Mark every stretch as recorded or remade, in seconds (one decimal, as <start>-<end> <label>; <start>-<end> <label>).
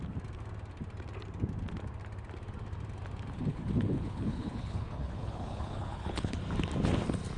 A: 0.0-3.5 recorded; 3.5-6.4 remade; 6.4-7.4 recorded